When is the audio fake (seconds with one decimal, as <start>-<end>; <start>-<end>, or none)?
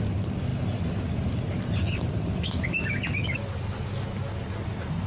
none